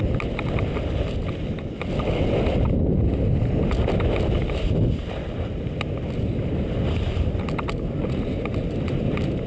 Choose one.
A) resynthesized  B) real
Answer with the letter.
B